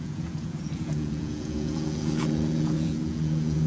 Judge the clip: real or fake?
fake